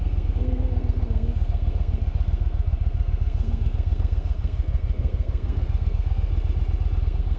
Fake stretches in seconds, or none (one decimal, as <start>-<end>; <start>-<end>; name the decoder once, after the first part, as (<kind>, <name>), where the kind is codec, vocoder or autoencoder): 0.0-6.3 (codec, SNAC); 7.0-7.4